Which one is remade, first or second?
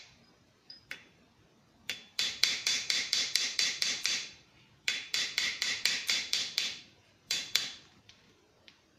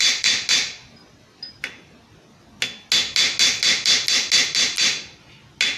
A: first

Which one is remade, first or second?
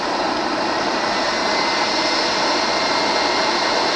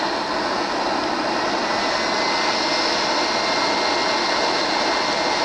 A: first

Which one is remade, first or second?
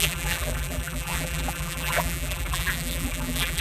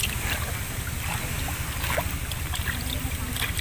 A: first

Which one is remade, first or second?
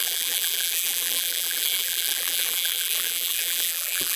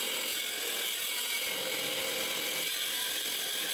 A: first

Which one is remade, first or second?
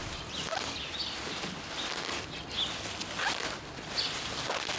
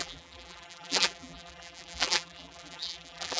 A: second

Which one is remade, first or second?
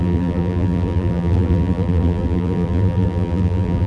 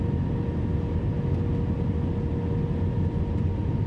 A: first